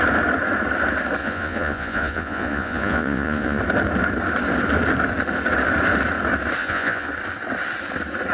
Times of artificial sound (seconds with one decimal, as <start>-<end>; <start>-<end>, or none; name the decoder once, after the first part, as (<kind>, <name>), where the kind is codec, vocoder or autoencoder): 1.2-3.6 (vocoder, Vocos); 6.6-7.1